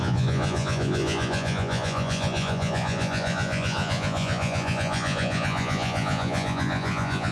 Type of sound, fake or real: fake